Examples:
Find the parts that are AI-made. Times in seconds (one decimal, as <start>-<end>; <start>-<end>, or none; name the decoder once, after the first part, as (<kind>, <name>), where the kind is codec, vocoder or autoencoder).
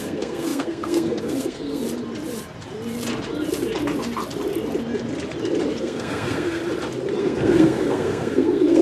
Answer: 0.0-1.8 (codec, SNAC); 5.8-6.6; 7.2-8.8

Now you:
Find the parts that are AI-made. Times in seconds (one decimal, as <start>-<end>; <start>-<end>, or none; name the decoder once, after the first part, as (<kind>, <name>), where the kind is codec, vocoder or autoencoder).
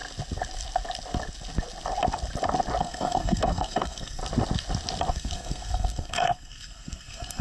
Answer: 2.8-4.2 (codec, SNAC); 5.1-7.4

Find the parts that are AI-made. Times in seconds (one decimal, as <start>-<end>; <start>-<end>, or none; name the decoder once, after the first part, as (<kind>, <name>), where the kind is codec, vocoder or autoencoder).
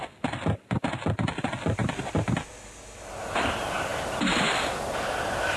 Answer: none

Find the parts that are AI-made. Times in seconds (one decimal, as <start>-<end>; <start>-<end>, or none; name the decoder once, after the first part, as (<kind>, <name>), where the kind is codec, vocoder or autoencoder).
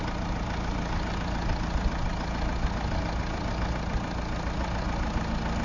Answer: none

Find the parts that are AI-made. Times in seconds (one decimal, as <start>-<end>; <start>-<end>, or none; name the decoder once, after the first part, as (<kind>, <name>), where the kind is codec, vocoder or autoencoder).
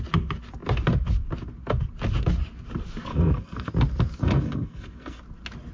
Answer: 3.1-3.7 (codec, SNAC); 4.2-5.2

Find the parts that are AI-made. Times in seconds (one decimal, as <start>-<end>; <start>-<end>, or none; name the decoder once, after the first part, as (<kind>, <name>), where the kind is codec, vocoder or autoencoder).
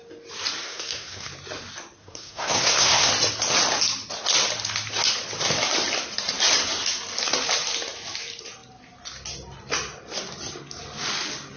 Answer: 0.6-1.3 (codec, SNAC); 2.0-3.1